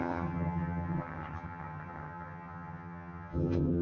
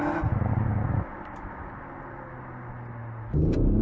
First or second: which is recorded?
second